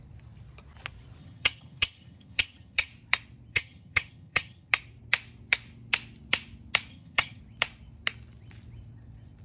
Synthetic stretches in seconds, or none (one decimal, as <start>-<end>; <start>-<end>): 1.2-2.9; 3.5-4.7; 6.9-7.4